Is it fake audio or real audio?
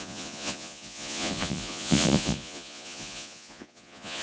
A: fake